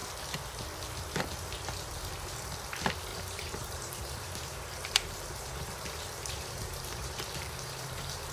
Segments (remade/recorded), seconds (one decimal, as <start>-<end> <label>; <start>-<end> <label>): 0.0-3.1 recorded; 3.1-8.3 remade